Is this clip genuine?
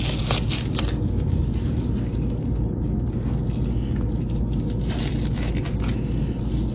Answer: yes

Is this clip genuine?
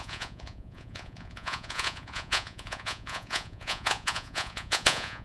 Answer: no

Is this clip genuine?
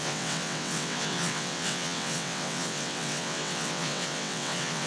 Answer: no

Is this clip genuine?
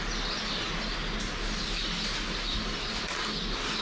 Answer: yes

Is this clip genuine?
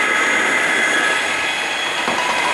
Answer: yes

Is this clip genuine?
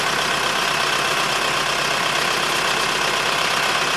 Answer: yes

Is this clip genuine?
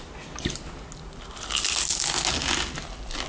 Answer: yes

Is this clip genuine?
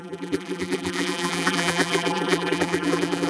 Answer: no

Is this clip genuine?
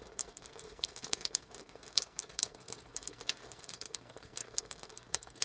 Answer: no